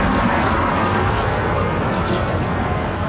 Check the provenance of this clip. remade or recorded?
remade